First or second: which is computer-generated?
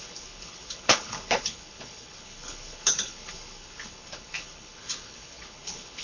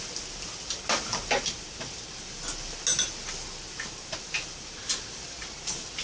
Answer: first